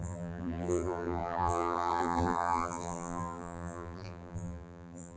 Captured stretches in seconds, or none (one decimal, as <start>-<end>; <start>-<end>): none